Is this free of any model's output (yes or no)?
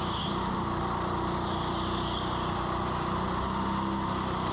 yes